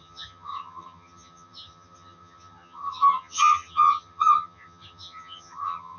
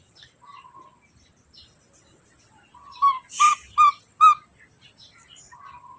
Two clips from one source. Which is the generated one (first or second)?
first